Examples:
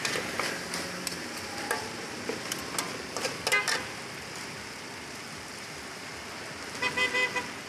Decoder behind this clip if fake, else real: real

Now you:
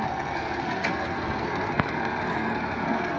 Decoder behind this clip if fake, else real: fake, codec, SNAC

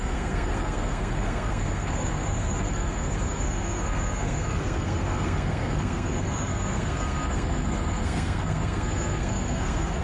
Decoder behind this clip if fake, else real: fake, codec, SNAC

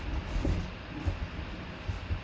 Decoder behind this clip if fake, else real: real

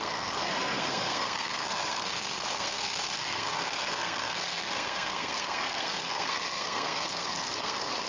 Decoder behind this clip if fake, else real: fake, codec, SNAC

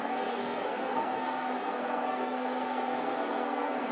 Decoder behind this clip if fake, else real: fake, codec, SNAC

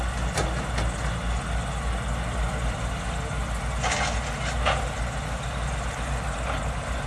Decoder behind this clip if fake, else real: real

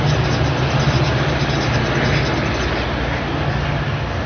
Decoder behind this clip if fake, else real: real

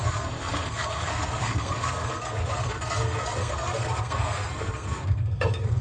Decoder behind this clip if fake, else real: fake, codec, SNAC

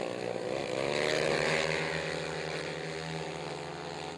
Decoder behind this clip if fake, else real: real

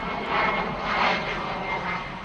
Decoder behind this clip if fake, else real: real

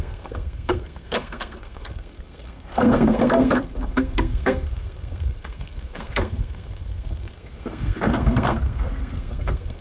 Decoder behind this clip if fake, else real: fake, codec, SNAC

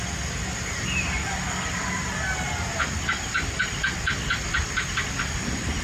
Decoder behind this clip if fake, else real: real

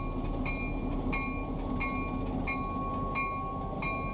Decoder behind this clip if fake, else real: real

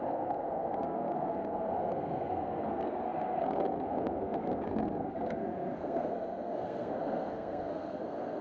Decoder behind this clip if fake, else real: fake, codec, SNAC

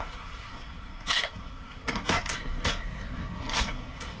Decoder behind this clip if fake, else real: fake, codec, SNAC